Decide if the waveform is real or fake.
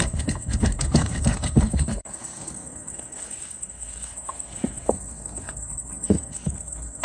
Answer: fake